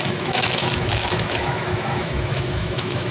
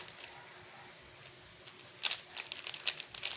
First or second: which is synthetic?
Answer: first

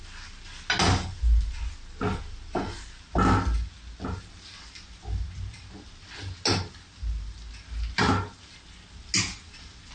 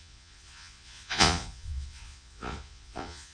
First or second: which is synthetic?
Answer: second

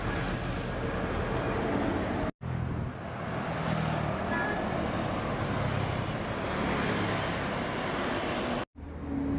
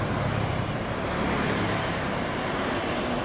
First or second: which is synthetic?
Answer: second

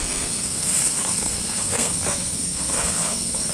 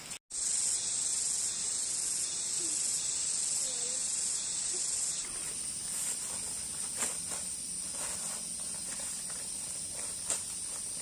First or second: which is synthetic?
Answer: first